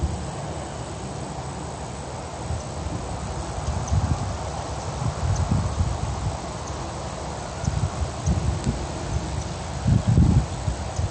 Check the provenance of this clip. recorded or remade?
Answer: recorded